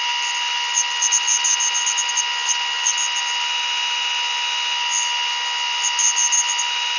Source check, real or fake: real